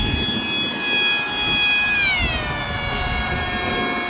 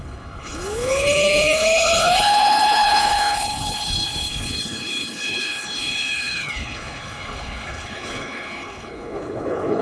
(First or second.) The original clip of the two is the first